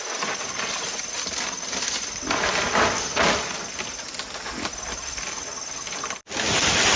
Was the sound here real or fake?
real